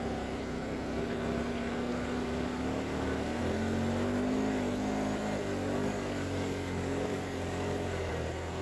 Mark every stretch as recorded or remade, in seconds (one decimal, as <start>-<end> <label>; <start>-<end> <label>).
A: 0.0-1.9 recorded; 1.9-3.4 remade; 3.4-5.8 recorded; 5.8-8.1 remade; 8.1-8.6 recorded